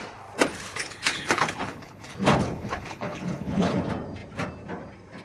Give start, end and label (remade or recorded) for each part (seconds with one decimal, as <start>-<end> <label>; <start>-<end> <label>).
0.0-0.7 recorded; 0.7-3.8 remade; 3.8-5.2 recorded